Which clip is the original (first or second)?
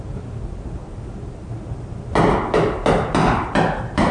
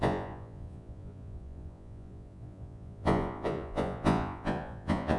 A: first